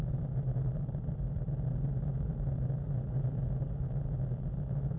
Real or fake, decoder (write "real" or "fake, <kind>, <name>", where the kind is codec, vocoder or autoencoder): real